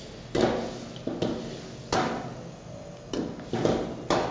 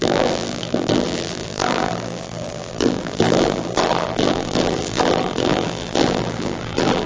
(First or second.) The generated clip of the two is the second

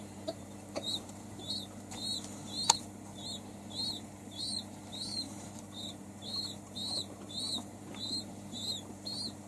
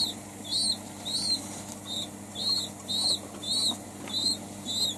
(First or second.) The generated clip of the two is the first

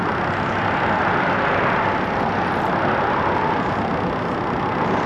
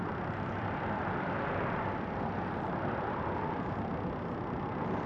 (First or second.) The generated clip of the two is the second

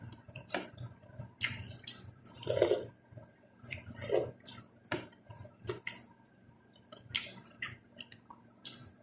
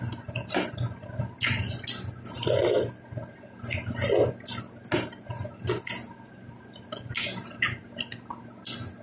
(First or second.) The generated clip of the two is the first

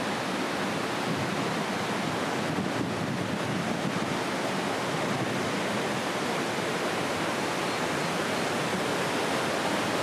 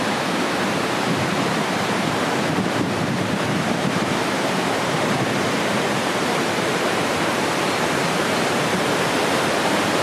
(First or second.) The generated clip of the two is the second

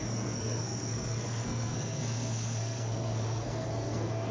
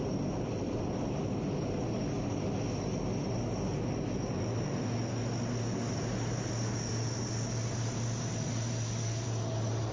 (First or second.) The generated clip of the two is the first